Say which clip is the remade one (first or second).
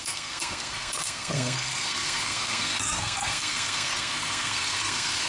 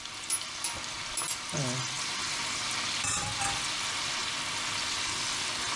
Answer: first